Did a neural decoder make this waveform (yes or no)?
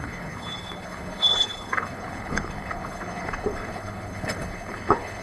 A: yes